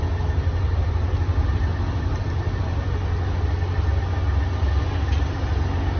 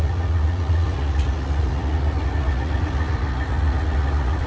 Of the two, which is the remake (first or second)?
second